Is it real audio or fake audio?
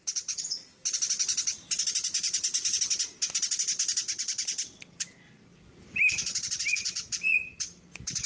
real